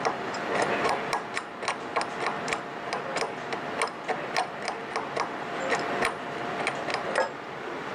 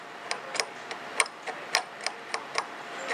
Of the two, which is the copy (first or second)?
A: second